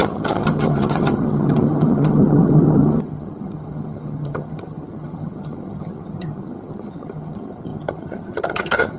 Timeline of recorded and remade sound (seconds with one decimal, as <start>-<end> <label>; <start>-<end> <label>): 0.0-9.0 remade